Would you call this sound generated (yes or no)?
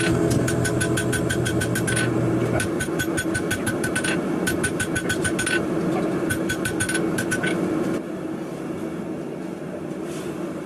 no